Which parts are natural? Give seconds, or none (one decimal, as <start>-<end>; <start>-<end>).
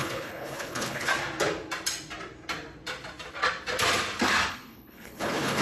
1.1-4.5